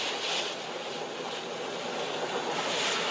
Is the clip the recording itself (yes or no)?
yes